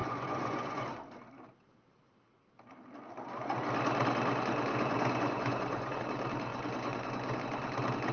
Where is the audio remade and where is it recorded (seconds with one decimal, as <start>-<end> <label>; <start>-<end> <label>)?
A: 0.0-0.8 remade; 0.8-4.7 recorded; 4.7-6.0 remade; 6.0-6.5 recorded; 6.5-7.4 remade; 7.4-8.1 recorded